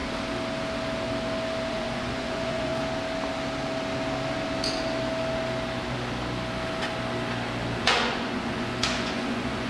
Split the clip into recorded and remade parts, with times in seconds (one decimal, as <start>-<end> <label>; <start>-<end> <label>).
0.0-1.7 recorded; 1.7-2.7 remade; 2.7-7.8 recorded; 7.8-9.7 remade

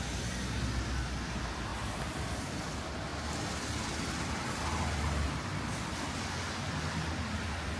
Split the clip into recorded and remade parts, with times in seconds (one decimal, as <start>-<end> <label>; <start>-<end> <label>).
0.0-7.8 recorded

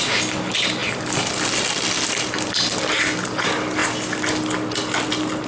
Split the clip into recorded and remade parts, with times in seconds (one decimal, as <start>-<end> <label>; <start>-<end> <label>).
0.0-5.5 recorded

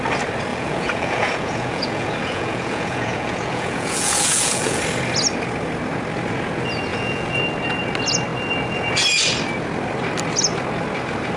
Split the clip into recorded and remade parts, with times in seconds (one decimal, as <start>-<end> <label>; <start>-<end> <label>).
0.0-0.5 recorded; 0.5-4.8 remade; 4.8-6.9 recorded; 6.9-7.4 remade; 7.4-11.4 recorded

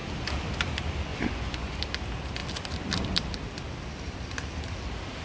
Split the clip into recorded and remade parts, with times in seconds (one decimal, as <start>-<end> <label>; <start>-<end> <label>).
0.0-1.1 recorded; 1.1-1.8 remade; 1.8-5.2 recorded

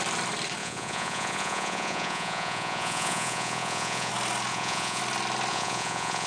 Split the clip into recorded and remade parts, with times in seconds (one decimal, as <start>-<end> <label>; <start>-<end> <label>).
0.0-0.6 recorded; 0.6-4.1 remade; 4.1-4.5 recorded; 4.5-5.0 remade; 5.0-5.5 recorded; 5.5-6.3 remade